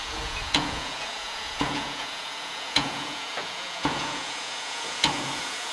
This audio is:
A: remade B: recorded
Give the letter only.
A